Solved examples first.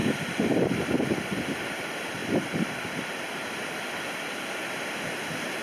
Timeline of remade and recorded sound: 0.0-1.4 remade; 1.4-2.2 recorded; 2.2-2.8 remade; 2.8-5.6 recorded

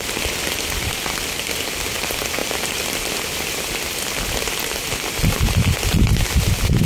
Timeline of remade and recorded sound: 0.0-6.8 recorded

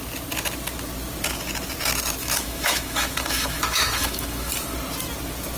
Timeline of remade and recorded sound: 0.0-2.2 recorded; 2.2-4.5 remade; 4.5-5.6 recorded